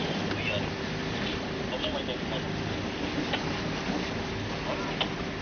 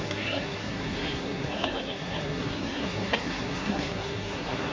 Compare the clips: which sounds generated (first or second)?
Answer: second